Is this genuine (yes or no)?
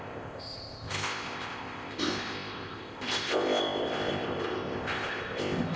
no